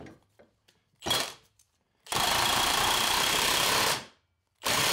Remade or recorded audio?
remade